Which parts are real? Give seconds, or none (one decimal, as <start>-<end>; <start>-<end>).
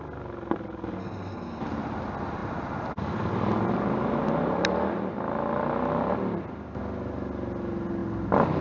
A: 0.0-1.0; 1.6-8.6